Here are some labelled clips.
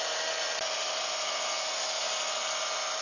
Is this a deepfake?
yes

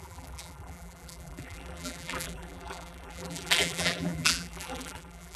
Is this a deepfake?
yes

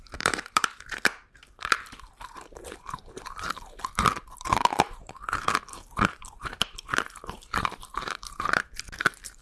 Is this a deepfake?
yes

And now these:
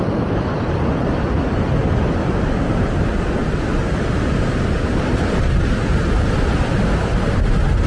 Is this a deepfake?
no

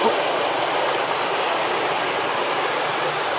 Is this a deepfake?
no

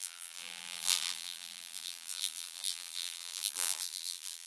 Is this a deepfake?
yes